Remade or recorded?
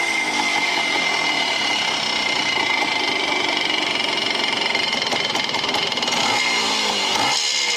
recorded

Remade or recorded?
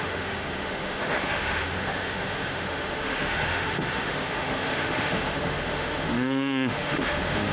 remade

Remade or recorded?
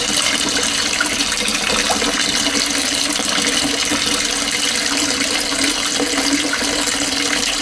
recorded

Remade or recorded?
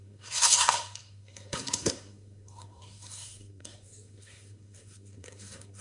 remade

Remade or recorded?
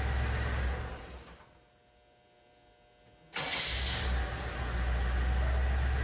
recorded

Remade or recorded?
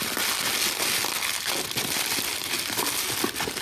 recorded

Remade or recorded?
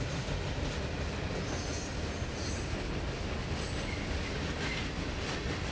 recorded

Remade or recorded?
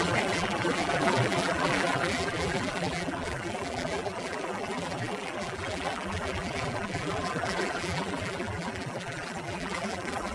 remade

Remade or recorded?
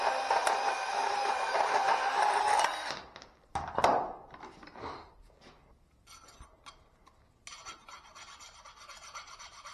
recorded